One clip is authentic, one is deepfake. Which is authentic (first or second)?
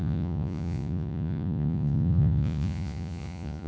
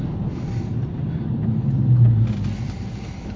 second